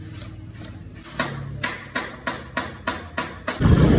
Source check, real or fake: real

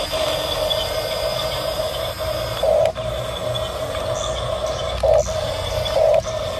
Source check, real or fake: real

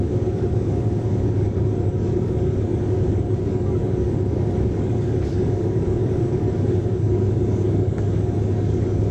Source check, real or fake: fake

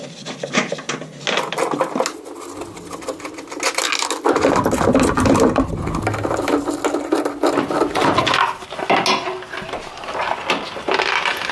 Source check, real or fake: real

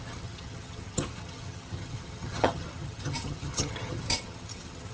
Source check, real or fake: fake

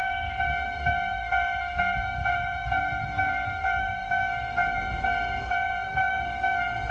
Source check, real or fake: fake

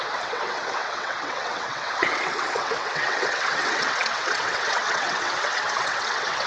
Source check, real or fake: fake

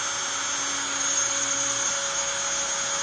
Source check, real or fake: real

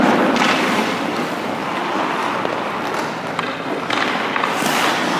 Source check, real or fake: fake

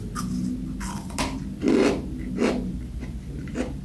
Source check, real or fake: real